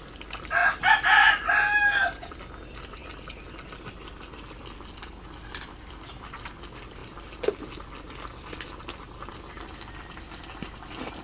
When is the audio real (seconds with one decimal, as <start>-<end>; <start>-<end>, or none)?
0.0-11.2